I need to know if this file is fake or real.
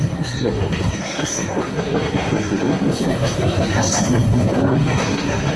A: fake